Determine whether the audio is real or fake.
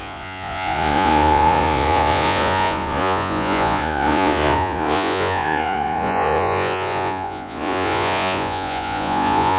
fake